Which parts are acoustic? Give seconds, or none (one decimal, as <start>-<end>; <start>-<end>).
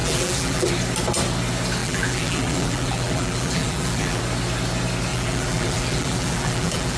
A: 0.7-1.8; 4.2-5.1